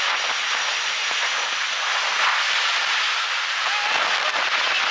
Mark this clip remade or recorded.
recorded